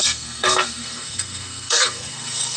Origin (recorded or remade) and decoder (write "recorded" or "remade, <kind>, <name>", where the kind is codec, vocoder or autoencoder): remade, codec, SNAC